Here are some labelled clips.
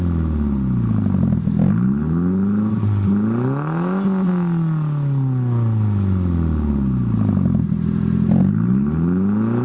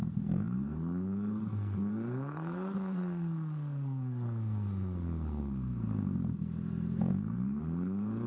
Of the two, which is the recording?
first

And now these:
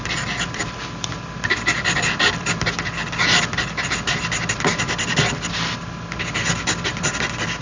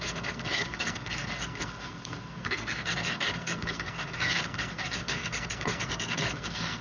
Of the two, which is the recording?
first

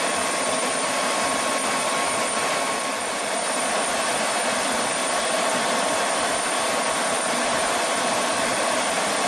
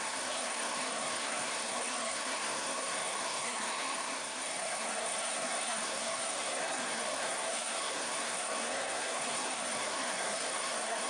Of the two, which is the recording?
first